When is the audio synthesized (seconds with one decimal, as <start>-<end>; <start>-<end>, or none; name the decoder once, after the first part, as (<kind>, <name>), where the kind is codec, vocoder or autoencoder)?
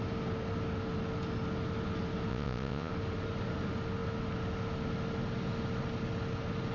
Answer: 2.3-2.9 (vocoder, Vocos)